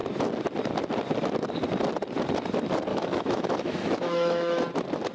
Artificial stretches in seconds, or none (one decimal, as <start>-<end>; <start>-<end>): 2.9-4.6